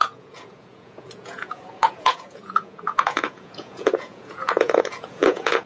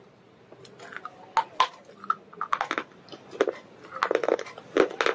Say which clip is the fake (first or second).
first